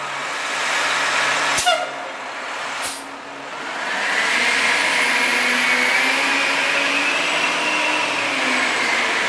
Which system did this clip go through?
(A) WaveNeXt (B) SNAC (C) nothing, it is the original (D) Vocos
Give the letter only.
C